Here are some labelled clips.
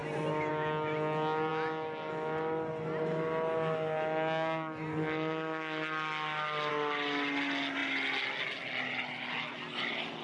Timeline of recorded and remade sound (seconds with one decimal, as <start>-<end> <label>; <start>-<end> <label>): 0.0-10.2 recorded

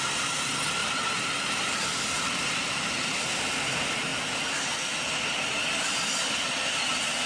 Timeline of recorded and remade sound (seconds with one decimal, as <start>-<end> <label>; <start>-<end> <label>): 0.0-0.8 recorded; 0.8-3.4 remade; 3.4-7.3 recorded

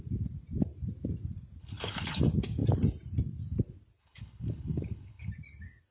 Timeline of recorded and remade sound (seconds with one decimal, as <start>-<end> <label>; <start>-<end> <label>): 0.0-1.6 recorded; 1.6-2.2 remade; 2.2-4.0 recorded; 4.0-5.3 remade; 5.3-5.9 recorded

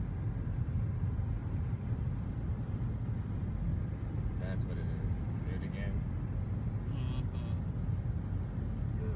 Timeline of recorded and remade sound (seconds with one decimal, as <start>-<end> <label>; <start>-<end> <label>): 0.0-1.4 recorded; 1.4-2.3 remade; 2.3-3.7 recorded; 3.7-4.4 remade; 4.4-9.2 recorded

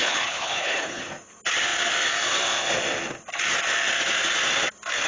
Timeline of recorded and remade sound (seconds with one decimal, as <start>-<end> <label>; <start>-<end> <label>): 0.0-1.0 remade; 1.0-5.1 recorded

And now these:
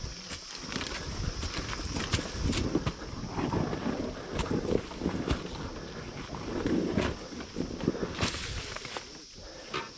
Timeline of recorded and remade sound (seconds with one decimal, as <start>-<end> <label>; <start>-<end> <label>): 0.0-10.0 recorded

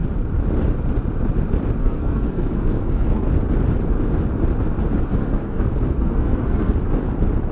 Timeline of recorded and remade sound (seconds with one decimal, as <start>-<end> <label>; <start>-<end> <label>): 0.0-1.8 recorded; 1.8-3.3 remade; 3.3-5.1 recorded; 5.1-6.7 remade; 6.7-7.5 recorded